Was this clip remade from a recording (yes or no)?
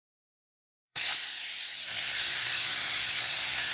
yes